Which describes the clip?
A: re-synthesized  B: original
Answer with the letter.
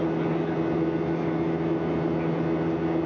B